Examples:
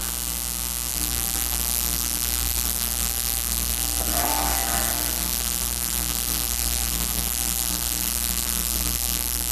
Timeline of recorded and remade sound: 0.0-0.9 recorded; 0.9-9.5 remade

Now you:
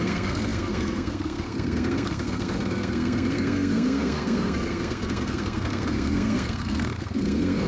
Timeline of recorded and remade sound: 0.0-7.7 remade

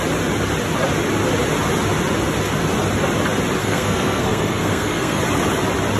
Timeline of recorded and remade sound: 0.0-3.6 recorded; 3.6-5.2 remade; 5.2-6.0 recorded

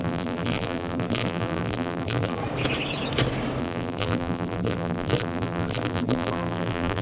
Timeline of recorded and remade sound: 0.0-2.4 remade; 2.4-3.6 recorded; 3.6-7.0 remade

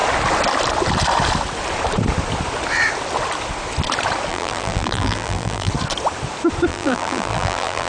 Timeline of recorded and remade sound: 0.0-4.3 recorded; 4.3-5.7 remade; 5.7-6.7 recorded; 6.7-7.9 remade